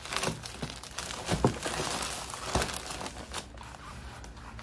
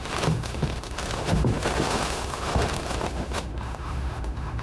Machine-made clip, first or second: second